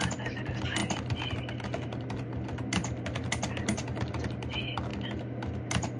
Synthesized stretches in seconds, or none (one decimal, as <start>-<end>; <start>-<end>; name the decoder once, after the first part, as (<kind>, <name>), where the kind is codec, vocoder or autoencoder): none